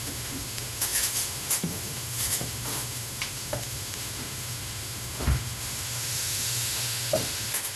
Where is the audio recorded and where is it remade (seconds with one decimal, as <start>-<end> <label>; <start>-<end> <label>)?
0.0-7.8 remade